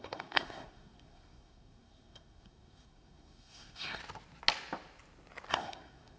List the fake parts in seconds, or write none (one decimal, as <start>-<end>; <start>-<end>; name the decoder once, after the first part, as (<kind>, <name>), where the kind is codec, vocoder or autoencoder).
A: 0.0-4.0 (codec, SNAC); 5.5-6.2